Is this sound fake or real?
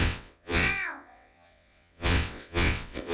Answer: fake